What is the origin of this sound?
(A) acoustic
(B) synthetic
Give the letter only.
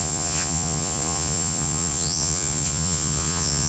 B